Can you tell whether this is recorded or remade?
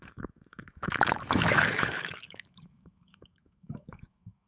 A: remade